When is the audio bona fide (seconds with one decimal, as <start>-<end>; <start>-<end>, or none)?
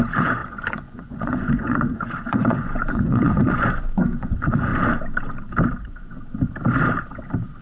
4.7-7.6